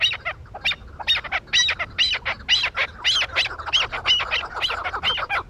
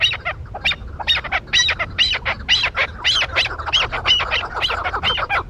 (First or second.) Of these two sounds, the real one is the first